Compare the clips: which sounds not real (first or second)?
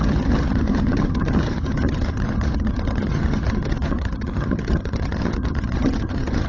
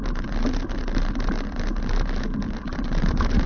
first